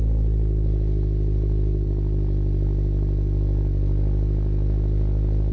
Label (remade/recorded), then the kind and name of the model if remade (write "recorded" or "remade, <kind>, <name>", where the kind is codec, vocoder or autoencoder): recorded